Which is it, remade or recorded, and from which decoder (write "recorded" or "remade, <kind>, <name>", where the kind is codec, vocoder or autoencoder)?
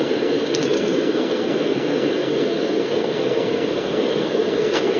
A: remade, codec, SNAC